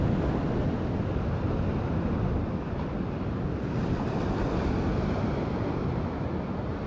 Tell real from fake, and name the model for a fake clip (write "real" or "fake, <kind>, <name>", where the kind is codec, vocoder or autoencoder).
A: real